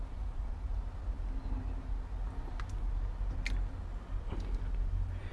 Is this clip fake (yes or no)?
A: no